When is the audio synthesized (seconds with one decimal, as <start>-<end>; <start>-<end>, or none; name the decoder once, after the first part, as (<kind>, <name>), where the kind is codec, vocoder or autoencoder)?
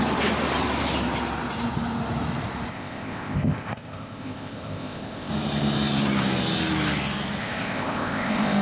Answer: 2.7-5.3 (codec, ZipCodec); 7.4-8.6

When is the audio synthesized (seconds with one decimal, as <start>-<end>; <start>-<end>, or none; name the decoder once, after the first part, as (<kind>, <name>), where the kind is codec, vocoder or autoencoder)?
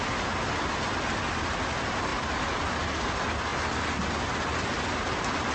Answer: none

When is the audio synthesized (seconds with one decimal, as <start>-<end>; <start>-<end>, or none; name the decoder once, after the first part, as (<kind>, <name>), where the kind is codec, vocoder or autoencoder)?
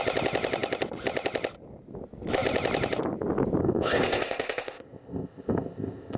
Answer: 3.6-6.2 (codec, ZipCodec)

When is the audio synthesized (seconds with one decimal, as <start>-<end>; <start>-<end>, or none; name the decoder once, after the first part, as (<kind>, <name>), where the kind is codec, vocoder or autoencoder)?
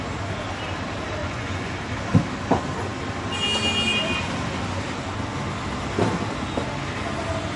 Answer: 1.2-1.7 (vocoder, Vocos)